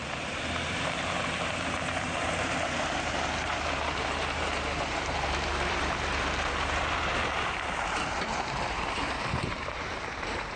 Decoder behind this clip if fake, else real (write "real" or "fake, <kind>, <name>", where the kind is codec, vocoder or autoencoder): fake, vocoder, BigVGAN v2